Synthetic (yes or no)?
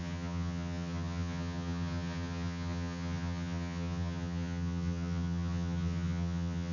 yes